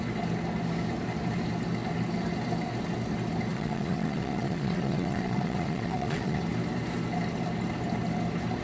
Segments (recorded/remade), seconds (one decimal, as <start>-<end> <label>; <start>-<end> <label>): 0.0-3.5 recorded; 3.5-6.4 remade; 6.4-8.6 recorded